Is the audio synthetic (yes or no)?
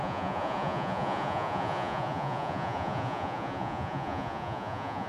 yes